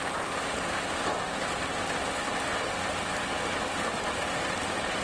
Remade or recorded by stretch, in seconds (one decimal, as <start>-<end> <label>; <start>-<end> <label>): 0.0-5.0 recorded

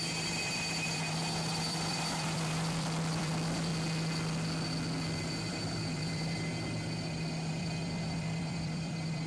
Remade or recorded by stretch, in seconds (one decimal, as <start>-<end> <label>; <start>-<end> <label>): 0.0-3.7 remade; 3.7-5.5 recorded; 5.5-6.5 remade; 6.5-7.5 recorded; 7.5-9.3 remade

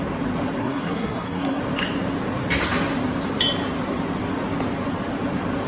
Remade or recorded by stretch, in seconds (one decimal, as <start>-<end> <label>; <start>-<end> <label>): 0.0-0.6 recorded; 0.6-1.6 remade; 1.6-5.7 recorded

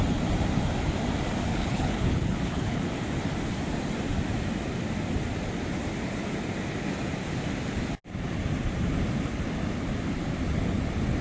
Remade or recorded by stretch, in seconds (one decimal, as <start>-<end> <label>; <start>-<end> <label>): 0.0-1.5 recorded; 1.5-2.9 remade; 2.9-11.2 recorded

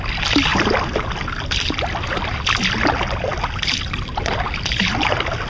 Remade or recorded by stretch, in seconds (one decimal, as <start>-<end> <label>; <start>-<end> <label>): 0.0-5.5 recorded

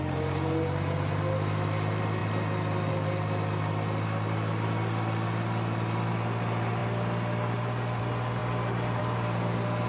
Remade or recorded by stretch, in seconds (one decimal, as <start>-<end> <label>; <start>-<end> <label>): 0.0-9.9 recorded

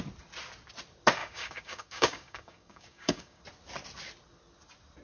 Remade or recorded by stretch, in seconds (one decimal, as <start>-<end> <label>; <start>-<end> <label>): 0.0-1.2 recorded; 1.2-3.4 remade; 3.4-5.0 recorded